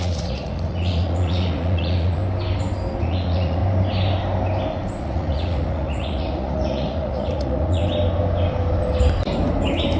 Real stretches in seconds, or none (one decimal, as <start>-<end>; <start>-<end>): 2.2-3.0; 3.6-5.0; 7.8-10.0